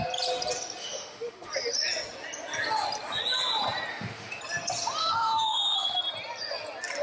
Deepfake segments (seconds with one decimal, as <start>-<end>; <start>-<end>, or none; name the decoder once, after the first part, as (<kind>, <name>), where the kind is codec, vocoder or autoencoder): 0.8-1.5 (autoencoder, DAC-VAE); 3.9-4.4; 5.0-6.0